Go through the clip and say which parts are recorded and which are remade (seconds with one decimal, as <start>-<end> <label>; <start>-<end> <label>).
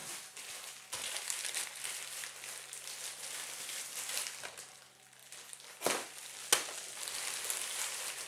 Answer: 0.0-8.3 recorded